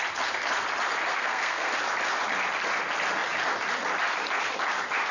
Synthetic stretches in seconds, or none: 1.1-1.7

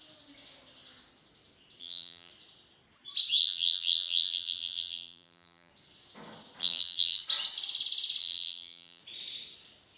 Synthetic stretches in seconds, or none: 1.8-2.3; 3.4-5.7; 6.6-7.2; 8.2-9.0

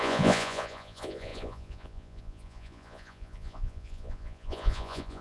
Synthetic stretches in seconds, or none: 0.0-5.2

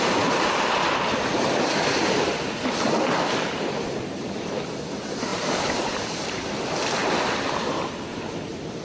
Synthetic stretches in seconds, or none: none

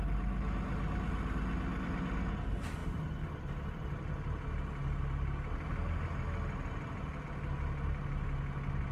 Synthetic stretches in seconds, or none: none